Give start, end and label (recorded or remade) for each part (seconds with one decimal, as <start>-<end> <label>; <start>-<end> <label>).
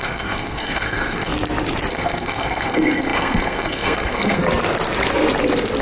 0.0-1.3 remade; 1.3-1.9 recorded; 1.9-4.4 remade; 4.4-5.8 recorded